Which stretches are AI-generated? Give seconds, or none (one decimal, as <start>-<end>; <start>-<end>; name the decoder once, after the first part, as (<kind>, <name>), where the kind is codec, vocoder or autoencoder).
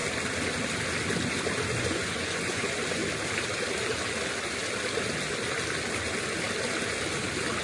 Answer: 1.8-3.0 (vocoder, Vocos)